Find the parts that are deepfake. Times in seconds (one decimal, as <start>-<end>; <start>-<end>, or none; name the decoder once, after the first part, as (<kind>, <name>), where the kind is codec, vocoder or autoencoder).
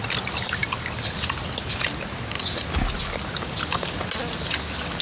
none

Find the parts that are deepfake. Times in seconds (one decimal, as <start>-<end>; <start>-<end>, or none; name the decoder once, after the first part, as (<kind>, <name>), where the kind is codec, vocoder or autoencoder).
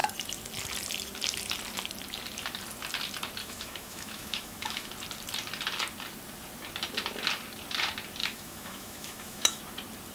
3.4-4.9 (autoencoder, DAC-VAE); 8.2-9.6